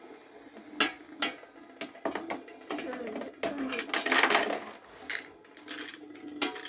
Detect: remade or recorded recorded